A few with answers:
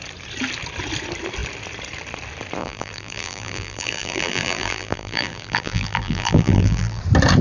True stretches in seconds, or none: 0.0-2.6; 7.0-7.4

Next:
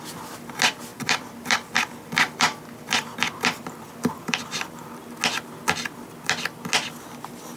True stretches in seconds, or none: 0.0-0.9; 5.0-7.6

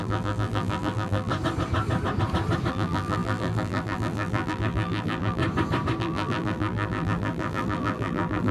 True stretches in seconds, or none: 1.3-2.7; 5.4-6.0